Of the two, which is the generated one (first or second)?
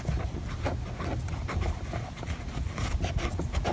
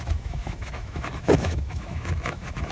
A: second